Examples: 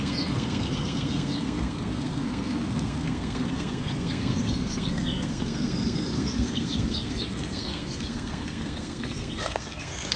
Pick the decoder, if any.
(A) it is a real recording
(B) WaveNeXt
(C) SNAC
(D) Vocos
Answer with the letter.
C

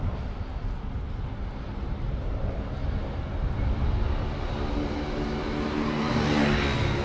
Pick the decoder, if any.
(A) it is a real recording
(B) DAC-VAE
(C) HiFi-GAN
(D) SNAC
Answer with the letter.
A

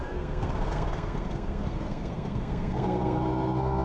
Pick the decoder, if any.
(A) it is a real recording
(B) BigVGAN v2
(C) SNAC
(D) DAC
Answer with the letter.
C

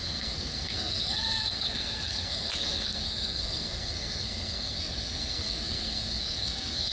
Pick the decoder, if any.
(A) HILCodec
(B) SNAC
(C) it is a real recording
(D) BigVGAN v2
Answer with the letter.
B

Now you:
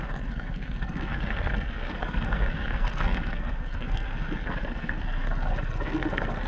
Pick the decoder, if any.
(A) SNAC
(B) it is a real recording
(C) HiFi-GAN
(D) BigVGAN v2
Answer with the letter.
A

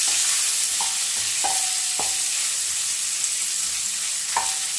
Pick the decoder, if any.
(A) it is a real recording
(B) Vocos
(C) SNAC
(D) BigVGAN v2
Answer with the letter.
A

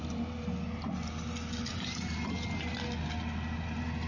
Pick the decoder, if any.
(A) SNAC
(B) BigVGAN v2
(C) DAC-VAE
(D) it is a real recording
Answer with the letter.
D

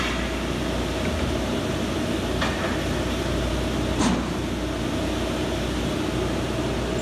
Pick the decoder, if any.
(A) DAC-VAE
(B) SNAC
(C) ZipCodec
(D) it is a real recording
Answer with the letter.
D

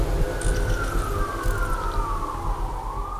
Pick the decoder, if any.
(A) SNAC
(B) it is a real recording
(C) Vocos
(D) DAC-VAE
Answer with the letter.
B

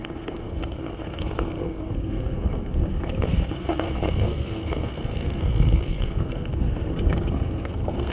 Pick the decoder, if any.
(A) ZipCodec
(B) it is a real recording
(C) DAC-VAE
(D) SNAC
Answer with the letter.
D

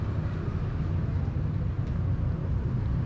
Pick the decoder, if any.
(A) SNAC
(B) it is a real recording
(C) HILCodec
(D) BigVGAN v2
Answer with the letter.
B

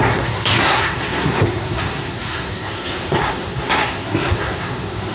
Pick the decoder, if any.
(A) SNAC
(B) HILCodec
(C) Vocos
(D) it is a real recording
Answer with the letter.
A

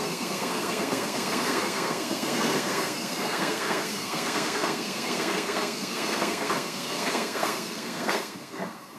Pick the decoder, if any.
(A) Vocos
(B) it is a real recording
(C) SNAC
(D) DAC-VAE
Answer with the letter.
C